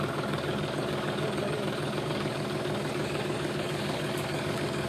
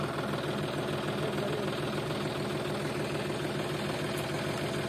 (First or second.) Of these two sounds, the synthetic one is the first